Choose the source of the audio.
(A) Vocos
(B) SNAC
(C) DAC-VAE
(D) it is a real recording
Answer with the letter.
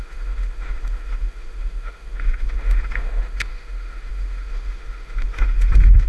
C